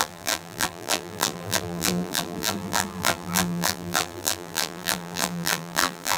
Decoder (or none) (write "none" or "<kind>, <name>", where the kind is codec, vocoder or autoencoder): vocoder, BigVGAN v2